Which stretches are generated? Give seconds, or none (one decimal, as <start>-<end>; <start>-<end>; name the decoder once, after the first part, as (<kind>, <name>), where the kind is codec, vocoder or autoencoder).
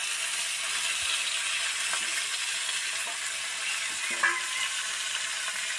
none